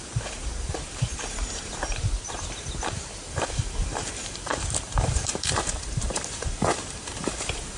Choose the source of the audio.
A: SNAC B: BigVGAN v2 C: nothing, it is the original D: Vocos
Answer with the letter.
B